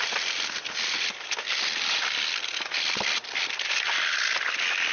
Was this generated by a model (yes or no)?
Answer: yes